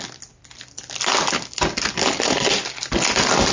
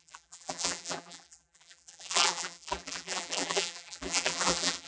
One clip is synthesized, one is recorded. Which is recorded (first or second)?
first